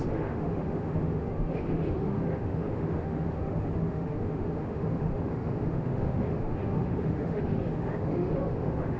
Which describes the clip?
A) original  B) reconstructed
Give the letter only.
B